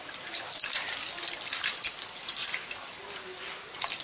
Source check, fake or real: real